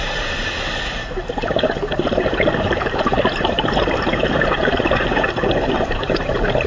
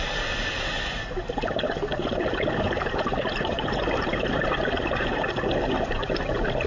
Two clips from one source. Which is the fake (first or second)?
first